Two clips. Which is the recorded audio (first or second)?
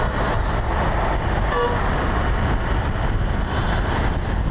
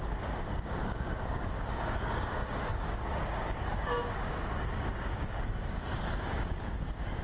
first